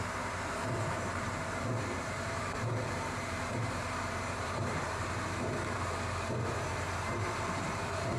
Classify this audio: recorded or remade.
remade